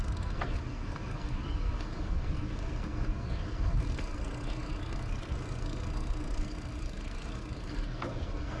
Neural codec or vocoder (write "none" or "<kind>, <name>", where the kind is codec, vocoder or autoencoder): codec, SNAC